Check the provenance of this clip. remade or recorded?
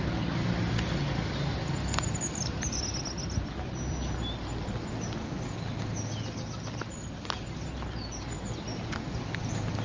recorded